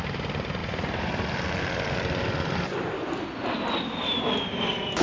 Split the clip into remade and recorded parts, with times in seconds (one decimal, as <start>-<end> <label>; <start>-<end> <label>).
0.0-0.6 recorded; 0.6-3.6 remade; 3.6-5.0 recorded